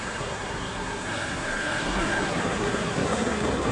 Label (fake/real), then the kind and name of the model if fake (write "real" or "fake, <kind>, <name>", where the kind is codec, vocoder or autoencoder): fake, codec, SNAC